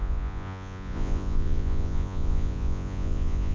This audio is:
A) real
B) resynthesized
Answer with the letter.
B